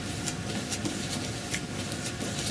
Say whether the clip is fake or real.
real